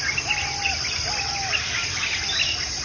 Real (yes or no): yes